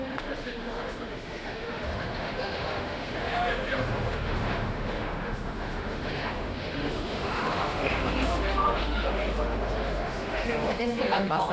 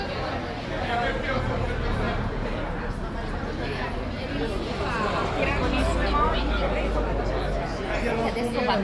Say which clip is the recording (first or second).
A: second